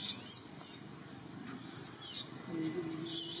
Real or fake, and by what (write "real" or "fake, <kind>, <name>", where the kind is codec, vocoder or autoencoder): real